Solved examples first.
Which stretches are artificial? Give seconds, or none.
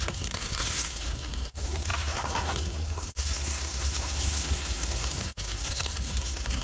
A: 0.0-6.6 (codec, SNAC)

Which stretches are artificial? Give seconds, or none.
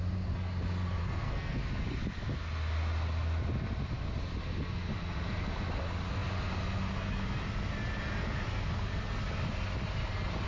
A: 1.0-1.6 (codec, SNAC)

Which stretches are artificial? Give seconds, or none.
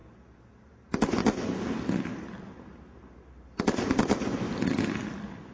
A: none